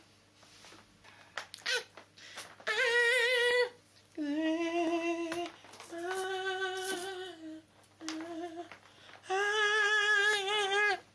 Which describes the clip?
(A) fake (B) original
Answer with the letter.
B